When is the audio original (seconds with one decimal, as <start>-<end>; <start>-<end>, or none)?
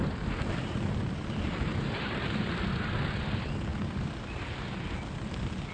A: 0.0-5.7